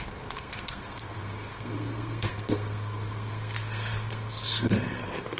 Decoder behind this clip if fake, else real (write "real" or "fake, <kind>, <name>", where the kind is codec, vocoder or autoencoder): fake, codec, SNAC